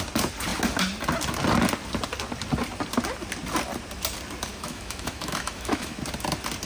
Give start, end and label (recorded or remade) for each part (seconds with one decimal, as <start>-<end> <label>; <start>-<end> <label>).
0.0-4.5 recorded; 4.5-6.0 remade; 6.0-6.7 recorded